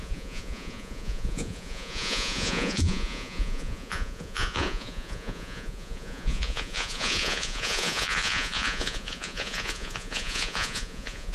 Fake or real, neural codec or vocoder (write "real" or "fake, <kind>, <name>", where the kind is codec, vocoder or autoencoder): fake, vocoder, Vocos